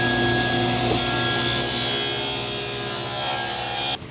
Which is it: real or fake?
real